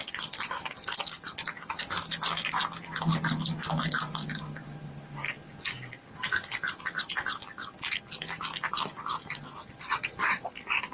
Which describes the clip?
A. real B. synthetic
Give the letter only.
A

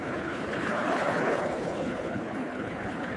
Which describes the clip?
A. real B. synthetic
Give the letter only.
B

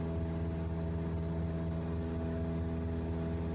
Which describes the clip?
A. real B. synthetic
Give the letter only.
A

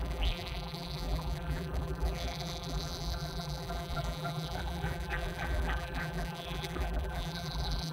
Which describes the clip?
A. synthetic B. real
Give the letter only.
A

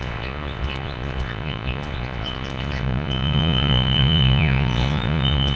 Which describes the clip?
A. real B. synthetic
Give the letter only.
B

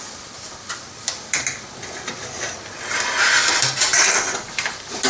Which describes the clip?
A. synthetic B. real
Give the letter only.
A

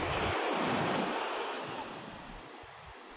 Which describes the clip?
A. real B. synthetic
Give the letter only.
A